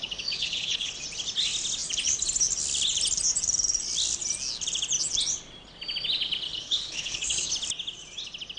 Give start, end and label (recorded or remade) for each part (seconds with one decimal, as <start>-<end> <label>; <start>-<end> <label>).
0.0-0.9 remade; 0.9-6.5 recorded; 6.5-7.5 remade; 7.5-8.6 recorded